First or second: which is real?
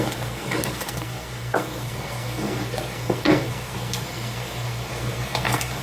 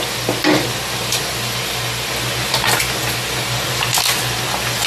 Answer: second